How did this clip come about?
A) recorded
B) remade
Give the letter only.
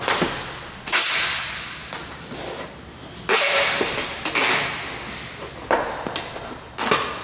A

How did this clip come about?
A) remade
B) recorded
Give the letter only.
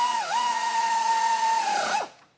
A